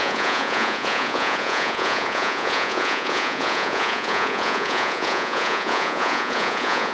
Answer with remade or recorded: remade